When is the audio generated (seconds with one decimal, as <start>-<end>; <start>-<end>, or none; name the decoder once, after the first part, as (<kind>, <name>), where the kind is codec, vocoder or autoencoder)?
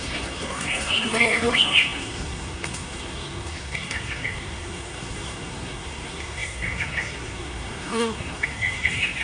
0.0-9.2 (codec, SNAC)